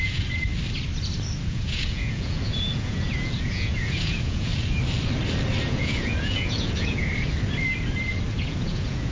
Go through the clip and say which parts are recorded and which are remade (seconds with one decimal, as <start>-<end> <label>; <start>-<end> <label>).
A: 0.0-0.5 remade; 0.5-1.5 recorded; 1.5-4.5 remade; 4.5-5.6 recorded; 5.6-7.1 remade; 7.1-8.3 recorded; 8.3-9.1 remade